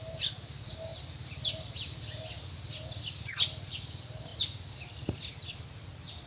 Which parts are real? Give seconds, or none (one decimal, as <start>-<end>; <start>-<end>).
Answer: 0.0-6.3